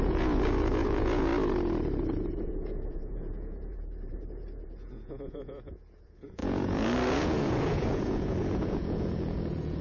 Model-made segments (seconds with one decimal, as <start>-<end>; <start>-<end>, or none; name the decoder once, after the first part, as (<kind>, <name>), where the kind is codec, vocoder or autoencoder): 0.0-1.3 (vocoder, Vocos); 2.4-9.8